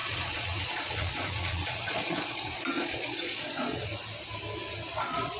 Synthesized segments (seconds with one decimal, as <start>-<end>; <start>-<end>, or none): 0.0-3.9; 5.0-5.4